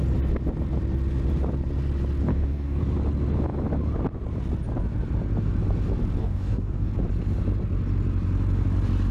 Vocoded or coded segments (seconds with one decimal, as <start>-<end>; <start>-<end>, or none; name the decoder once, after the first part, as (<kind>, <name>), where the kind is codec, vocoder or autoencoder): 2.3-2.8 (codec, DAC); 6.2-6.9